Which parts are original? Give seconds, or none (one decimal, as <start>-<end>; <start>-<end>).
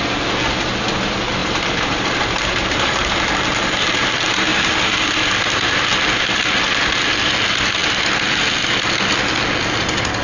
0.0-1.4; 3.2-10.2